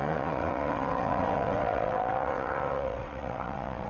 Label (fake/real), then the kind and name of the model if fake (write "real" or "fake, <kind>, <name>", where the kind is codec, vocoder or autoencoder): fake, vocoder, WaveNeXt